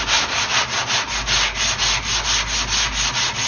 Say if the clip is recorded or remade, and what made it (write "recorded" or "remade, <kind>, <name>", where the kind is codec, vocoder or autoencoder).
recorded